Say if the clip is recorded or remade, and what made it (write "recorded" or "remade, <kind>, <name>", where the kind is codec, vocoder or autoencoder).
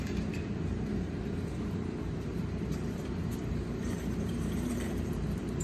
remade, vocoder, BigVGAN v2